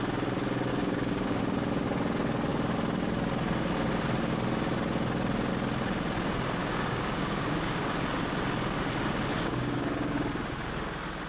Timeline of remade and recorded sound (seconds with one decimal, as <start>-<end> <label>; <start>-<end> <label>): 0.0-0.7 recorded; 0.7-1.4 remade; 1.4-6.6 recorded; 6.6-7.9 remade; 7.9-9.3 recorded; 9.3-10.7 remade; 10.7-11.3 recorded